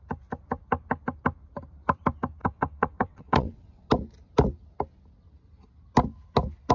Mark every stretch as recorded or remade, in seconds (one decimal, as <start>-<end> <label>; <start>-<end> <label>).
0.0-2.4 recorded; 2.4-3.9 remade; 3.9-6.7 recorded